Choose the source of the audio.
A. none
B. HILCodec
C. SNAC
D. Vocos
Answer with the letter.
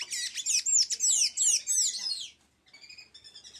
A